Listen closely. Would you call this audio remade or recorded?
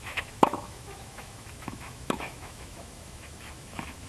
remade